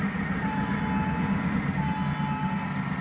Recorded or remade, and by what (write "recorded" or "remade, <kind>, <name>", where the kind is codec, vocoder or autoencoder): recorded